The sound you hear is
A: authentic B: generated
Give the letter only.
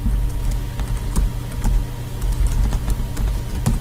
A